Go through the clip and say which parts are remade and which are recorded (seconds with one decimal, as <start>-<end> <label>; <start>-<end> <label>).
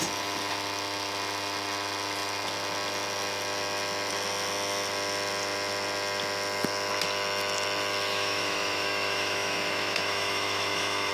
0.0-8.1 recorded; 8.1-11.1 remade